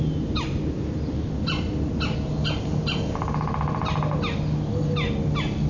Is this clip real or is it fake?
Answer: real